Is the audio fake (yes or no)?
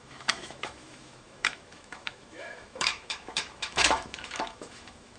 yes